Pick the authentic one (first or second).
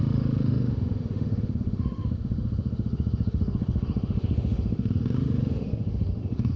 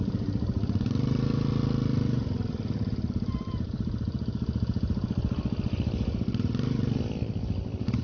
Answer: second